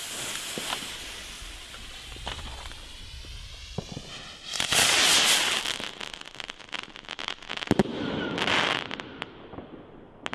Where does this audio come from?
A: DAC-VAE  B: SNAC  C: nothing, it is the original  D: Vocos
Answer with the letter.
C